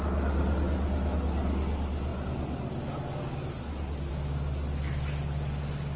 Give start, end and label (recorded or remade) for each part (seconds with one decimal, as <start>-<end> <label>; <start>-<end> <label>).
0.0-6.0 recorded